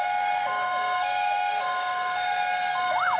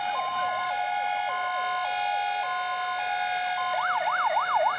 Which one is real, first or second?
second